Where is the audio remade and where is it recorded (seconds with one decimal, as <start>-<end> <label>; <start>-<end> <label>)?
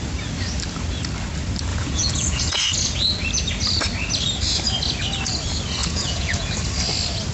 0.0-1.7 recorded; 1.7-2.6 remade; 2.6-5.8 recorded; 5.8-6.5 remade; 6.5-7.3 recorded